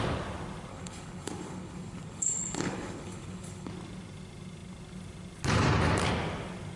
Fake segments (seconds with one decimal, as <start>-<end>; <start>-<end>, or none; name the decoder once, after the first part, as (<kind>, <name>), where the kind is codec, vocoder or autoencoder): 0.7-3.7 (codec, HILCodec)